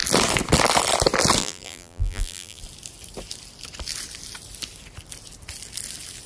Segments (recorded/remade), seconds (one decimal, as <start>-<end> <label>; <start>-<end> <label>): 0.0-1.4 recorded; 1.4-2.6 remade; 2.6-6.3 recorded

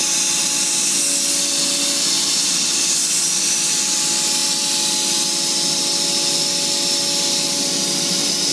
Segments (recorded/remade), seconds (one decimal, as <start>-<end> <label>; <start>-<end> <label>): 0.0-4.4 recorded; 4.4-5.0 remade; 5.0-8.5 recorded